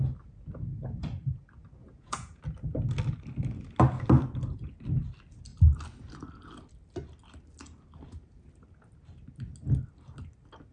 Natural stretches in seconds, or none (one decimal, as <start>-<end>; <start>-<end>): 0.0-1.8; 2.4-10.7